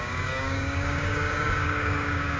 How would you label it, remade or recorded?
remade